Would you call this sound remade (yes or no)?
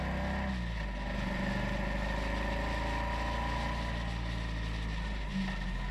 no